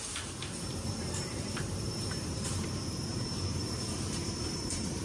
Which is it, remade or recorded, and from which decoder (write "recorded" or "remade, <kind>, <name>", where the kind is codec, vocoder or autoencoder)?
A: remade, vocoder, BigVGAN v2